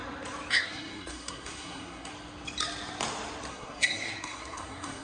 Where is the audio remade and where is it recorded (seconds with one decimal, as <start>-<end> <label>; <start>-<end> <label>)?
0.0-0.5 recorded; 0.5-2.1 remade; 2.1-3.5 recorded; 3.5-5.0 remade